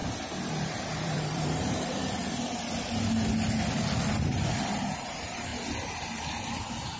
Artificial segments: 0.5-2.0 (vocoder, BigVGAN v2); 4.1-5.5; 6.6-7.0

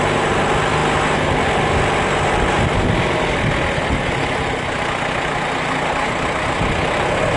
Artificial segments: none